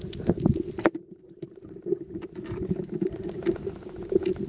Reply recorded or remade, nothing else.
recorded